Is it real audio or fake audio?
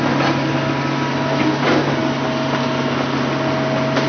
real